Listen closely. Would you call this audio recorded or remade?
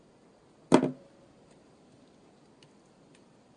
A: recorded